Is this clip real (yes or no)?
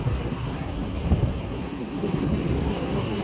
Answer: no